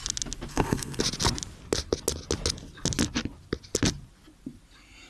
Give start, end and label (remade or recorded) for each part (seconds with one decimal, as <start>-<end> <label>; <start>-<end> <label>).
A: 0.0-0.5 recorded; 0.5-1.0 remade; 1.0-5.1 recorded